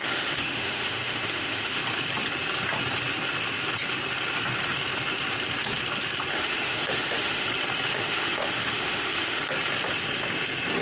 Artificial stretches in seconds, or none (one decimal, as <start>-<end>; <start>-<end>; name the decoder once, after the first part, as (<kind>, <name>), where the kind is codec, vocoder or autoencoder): 0.0-1.8 (autoencoder, DAC-VAE); 6.3-7.5; 7.9-9.4